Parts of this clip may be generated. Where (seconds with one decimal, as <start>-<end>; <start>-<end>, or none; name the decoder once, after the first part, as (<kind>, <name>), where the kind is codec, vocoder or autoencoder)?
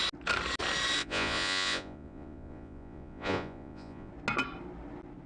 1.0-4.1 (vocoder, Vocos)